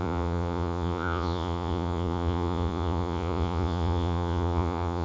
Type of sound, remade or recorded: remade